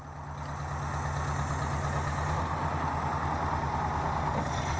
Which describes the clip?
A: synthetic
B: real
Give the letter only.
B